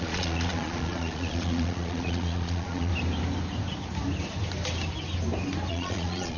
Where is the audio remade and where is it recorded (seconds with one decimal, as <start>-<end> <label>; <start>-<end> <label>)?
0.0-2.9 remade; 2.9-5.7 recorded; 5.7-6.4 remade